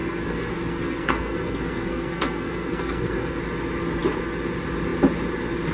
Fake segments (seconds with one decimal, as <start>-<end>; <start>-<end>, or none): 0.0-3.4